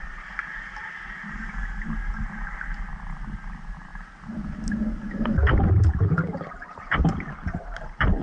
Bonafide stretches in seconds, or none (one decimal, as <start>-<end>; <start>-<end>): 0.0-8.2